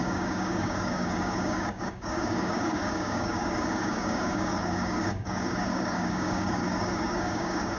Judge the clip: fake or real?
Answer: fake